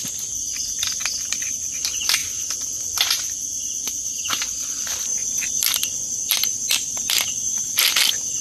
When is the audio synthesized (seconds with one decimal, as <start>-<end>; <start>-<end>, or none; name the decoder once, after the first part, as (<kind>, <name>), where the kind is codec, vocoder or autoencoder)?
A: none